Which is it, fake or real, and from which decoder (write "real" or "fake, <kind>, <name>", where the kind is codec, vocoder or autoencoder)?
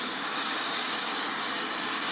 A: fake, codec, DAC